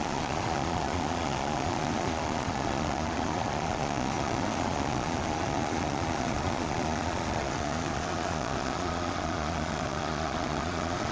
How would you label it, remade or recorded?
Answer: remade